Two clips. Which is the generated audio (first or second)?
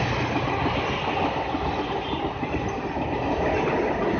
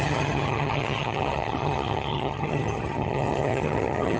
second